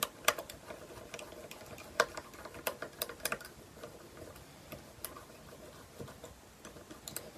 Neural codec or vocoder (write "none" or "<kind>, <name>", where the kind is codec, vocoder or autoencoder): none